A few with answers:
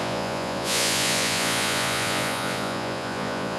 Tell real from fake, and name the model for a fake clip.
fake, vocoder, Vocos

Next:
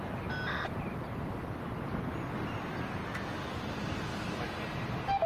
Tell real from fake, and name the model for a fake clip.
real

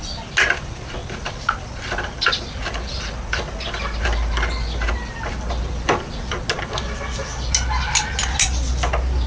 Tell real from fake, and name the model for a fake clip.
real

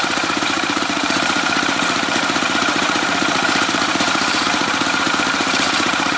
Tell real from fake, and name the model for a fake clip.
fake, vocoder, Vocos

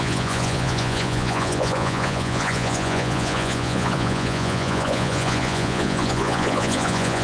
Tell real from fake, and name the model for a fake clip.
fake, vocoder, Vocos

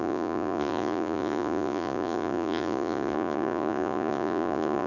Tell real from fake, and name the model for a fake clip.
fake, vocoder, Vocos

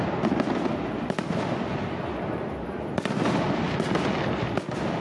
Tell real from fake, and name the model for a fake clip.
real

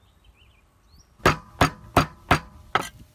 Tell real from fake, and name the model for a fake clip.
real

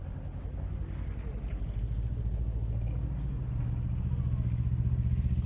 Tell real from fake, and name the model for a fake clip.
real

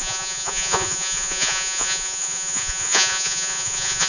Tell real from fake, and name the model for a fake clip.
fake, vocoder, Vocos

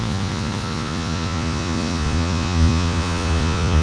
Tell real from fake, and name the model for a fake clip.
fake, vocoder, Vocos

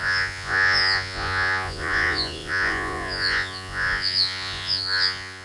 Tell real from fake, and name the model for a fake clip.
fake, vocoder, Vocos